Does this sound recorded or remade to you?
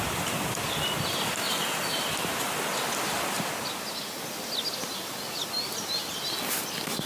recorded